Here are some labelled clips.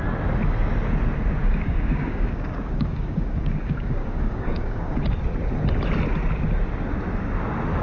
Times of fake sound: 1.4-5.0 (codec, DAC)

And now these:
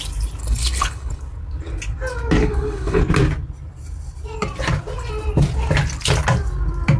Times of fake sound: 0.4-1.2 (codec, HILCodec); 2.4-3.0

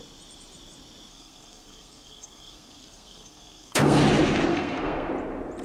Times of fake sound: 1.1-4.0 (codec, SNAC); 4.5-5.1

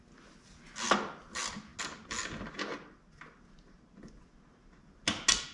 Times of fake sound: none

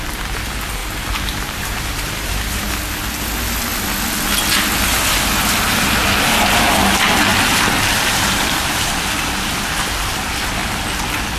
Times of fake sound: 0.8-2.7 (vocoder, BigVGAN v2); 7.3-9.0

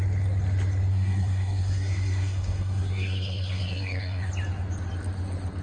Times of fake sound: 0.9-4.3 (codec, SNAC)